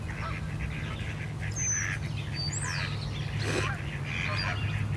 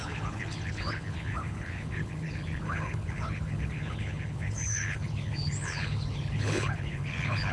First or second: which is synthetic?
second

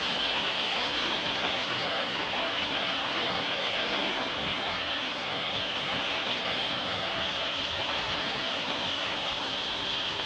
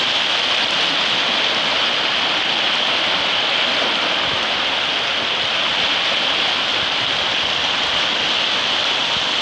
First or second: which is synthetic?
first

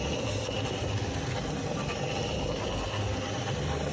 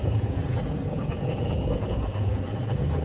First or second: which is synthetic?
second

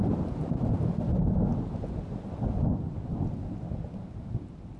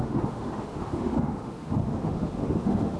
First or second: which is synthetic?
second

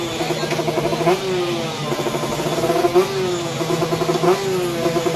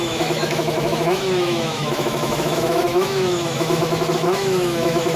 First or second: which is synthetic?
second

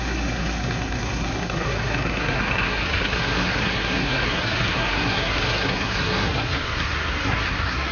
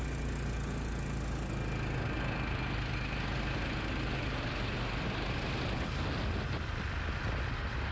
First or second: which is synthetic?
first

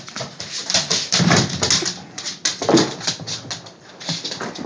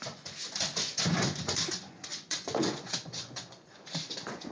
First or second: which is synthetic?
second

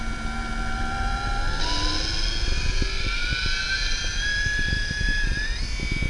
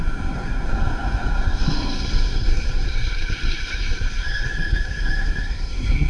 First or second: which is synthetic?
second